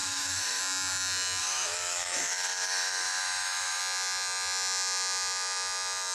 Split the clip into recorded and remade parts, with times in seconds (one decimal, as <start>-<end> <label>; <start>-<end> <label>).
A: 0.0-0.6 remade; 0.6-1.4 recorded; 1.4-3.8 remade; 3.8-6.1 recorded

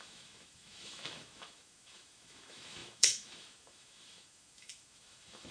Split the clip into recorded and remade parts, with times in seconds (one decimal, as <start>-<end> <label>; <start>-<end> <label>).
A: 0.0-5.5 remade

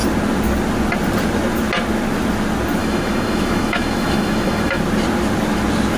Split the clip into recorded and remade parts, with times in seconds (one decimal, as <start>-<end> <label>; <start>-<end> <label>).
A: 0.0-2.8 recorded; 2.8-4.8 remade; 4.8-6.0 recorded

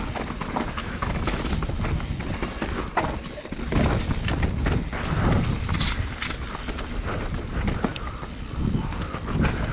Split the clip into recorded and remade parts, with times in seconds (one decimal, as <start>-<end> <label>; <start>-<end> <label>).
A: 0.0-0.8 recorded; 0.8-1.4 remade; 1.4-9.7 recorded